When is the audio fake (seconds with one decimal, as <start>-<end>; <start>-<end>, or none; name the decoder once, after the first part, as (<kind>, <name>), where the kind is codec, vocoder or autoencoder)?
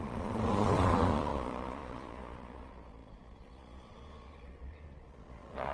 0.0-5.7 (vocoder, Vocos)